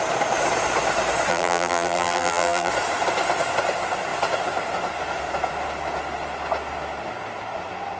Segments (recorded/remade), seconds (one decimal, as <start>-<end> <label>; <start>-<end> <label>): 0.0-1.3 recorded; 1.3-2.7 remade; 2.7-8.0 recorded